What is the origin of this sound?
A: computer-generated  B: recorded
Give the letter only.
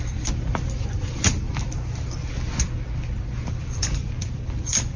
B